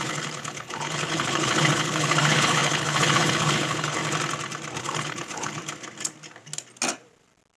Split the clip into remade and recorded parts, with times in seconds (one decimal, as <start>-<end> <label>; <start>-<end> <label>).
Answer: 0.0-4.0 remade; 4.0-4.8 recorded; 4.8-5.6 remade; 5.6-7.6 recorded